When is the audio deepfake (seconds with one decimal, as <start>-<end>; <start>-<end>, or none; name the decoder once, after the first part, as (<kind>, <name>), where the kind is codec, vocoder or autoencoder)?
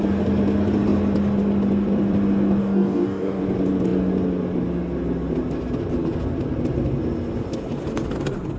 2.6-3.4 (codec, DAC)